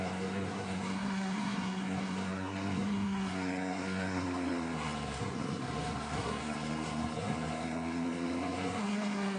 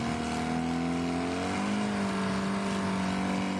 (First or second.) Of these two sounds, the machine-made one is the first